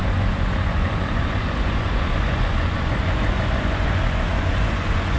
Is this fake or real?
fake